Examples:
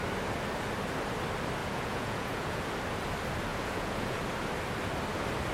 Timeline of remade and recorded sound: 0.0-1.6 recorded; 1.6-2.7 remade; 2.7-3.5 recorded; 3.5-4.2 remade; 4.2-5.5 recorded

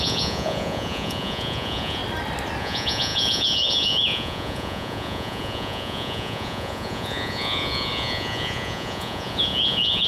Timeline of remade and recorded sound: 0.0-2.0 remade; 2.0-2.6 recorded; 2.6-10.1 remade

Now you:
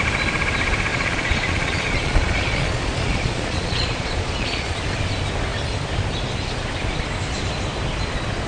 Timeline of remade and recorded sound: 0.0-0.9 recorded; 0.9-4.8 remade; 4.8-8.5 recorded

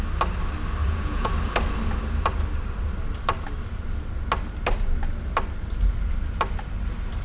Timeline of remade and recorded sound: 0.0-0.8 recorded; 0.8-1.3 remade; 1.3-7.2 recorded

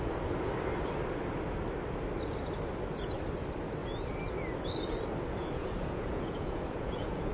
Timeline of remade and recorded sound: 0.0-5.4 recorded; 5.4-7.3 remade

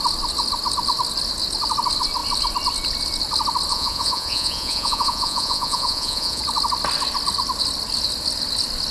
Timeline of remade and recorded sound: 0.0-3.7 recorded; 3.7-6.4 remade; 6.4-8.9 recorded